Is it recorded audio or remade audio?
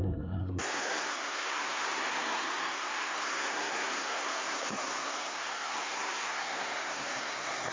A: remade